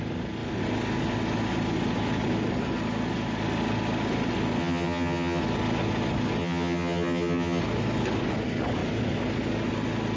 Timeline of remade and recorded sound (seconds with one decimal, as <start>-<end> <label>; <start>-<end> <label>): 0.0-4.6 recorded; 4.6-5.4 remade; 5.4-6.4 recorded; 6.4-7.6 remade; 7.6-10.2 recorded